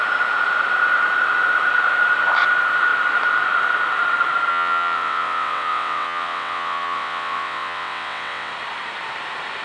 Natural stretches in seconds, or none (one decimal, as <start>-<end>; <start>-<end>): 0.0-4.5; 8.5-9.6